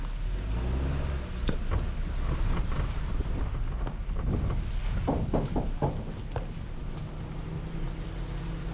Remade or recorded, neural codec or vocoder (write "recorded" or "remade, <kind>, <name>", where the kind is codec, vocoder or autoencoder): recorded